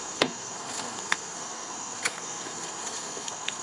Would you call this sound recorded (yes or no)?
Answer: no